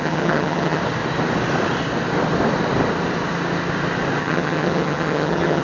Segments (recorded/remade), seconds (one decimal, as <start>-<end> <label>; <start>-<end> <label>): 0.0-0.8 remade; 0.8-4.2 recorded; 4.2-5.6 remade